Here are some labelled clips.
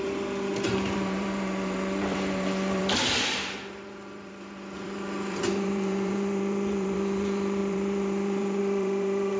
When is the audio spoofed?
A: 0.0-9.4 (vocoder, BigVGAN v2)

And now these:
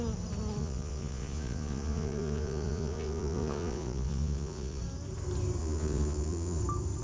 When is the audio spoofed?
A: 0.6-4.8 (vocoder, Vocos); 5.6-6.6

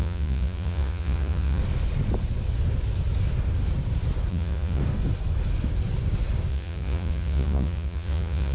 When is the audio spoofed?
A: 0.0-1.6 (vocoder, Vocos); 4.3-4.8; 6.5-8.5

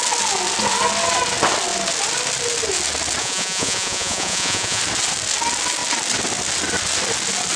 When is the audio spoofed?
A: 3.2-4.8 (vocoder, Vocos)

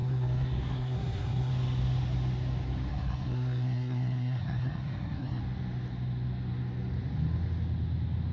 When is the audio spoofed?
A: 0.0-1.5 (codec, SNAC); 2.9-5.4

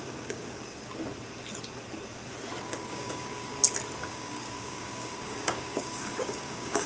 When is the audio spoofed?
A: 0.0-0.9 (codec, DAC); 2.6-3.5; 4.0-6.9

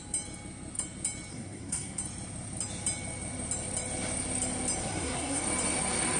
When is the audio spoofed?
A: 1.3-2.0 (codec, SNAC); 4.8-5.4